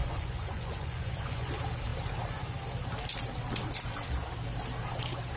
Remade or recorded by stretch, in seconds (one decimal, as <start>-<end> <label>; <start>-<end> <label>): 0.0-1.5 remade; 1.5-5.4 recorded